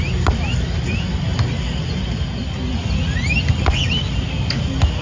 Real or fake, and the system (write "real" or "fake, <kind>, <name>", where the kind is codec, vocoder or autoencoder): real